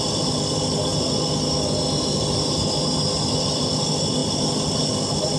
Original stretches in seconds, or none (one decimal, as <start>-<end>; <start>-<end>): 0.0-5.4